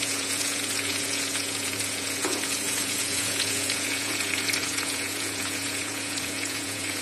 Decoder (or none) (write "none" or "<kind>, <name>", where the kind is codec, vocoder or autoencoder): vocoder, Vocos